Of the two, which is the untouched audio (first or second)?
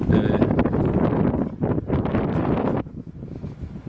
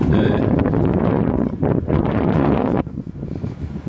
first